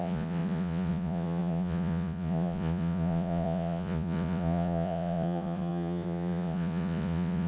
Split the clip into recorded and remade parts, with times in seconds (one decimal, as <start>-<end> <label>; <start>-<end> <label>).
0.0-7.5 remade